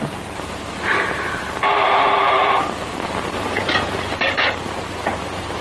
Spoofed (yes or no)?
yes